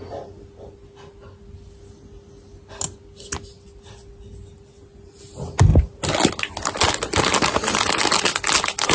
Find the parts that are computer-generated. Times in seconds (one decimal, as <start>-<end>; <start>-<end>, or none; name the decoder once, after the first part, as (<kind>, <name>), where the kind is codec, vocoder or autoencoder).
none